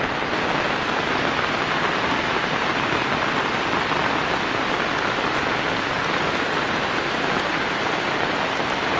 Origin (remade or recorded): recorded